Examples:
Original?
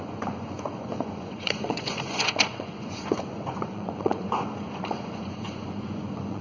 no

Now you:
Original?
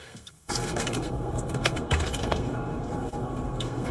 no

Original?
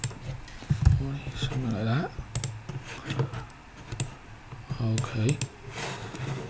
yes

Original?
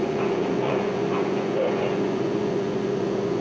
no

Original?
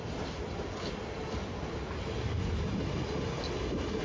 yes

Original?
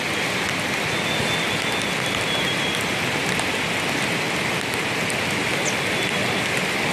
yes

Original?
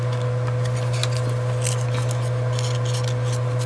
yes